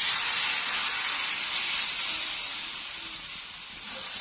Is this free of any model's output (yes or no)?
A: yes